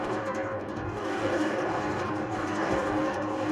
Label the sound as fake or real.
fake